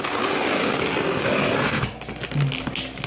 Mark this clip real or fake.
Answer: real